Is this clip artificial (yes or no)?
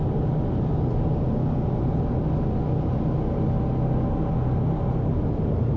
no